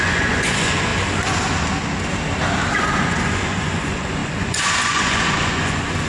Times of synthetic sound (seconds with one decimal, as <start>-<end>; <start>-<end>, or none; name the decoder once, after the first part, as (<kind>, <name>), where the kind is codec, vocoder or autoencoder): 0.0-0.9 (vocoder, Vocos); 2.7-6.1